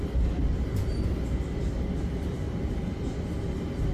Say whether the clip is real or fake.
real